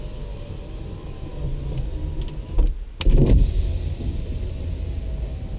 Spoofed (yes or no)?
no